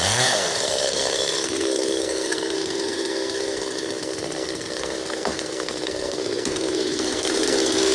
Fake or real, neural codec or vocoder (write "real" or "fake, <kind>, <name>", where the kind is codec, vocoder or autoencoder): fake, codec, SNAC